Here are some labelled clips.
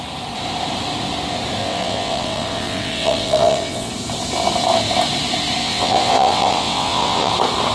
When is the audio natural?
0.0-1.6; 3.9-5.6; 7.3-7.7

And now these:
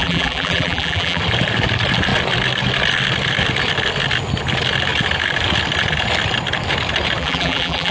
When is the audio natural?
1.2-7.2

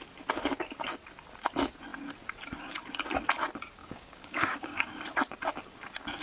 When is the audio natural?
0.0-3.8; 5.0-6.2